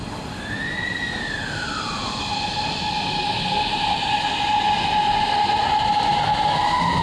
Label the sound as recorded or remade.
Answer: recorded